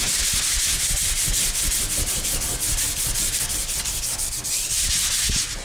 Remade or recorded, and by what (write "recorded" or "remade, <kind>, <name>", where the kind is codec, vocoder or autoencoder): recorded